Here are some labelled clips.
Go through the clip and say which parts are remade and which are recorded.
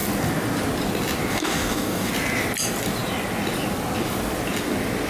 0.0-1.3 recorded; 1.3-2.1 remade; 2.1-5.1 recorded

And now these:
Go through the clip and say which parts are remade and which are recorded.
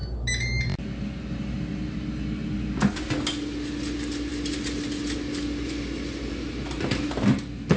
0.0-7.8 recorded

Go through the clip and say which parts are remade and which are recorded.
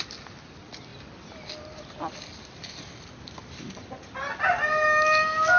0.0-5.6 recorded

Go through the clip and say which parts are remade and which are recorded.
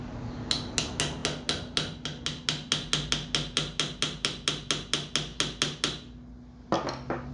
0.0-7.3 recorded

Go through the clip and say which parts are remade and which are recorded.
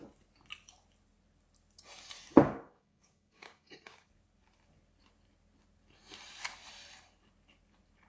0.0-2.5 recorded; 2.5-4.1 remade; 4.1-8.1 recorded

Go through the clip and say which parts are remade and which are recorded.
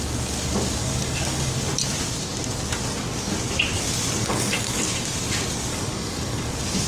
0.0-0.8 recorded; 0.8-1.5 remade; 1.5-4.2 recorded; 4.2-4.8 remade; 4.8-5.7 recorded; 5.7-6.5 remade; 6.5-6.9 recorded